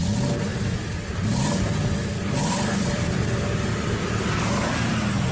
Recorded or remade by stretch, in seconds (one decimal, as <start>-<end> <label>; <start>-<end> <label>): 0.0-0.5 recorded; 0.5-3.7 remade; 3.7-5.3 recorded